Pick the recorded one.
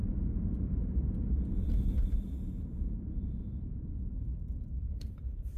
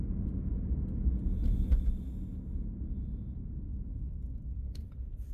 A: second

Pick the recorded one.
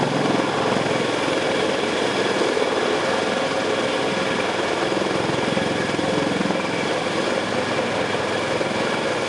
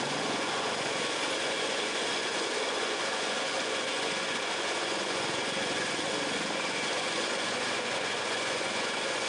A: first